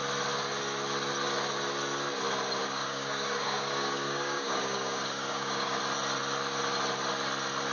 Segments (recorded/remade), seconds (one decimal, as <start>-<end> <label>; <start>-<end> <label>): 0.0-2.6 recorded; 2.6-5.8 remade; 5.8-7.7 recorded